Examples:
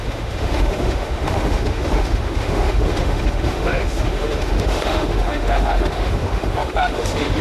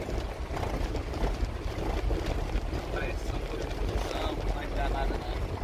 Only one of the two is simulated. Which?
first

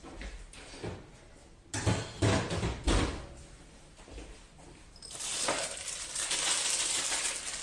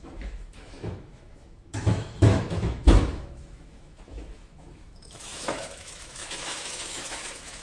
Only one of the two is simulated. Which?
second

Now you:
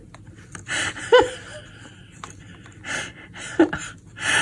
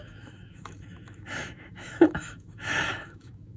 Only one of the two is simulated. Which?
second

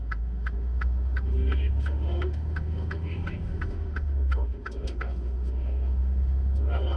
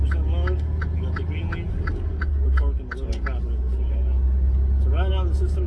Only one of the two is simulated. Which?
first